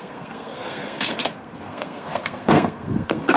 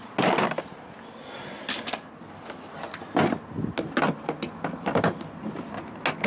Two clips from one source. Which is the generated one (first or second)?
first